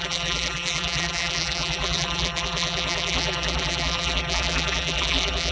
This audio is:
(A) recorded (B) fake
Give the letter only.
B